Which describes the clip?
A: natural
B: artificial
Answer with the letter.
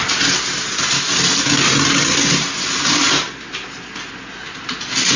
A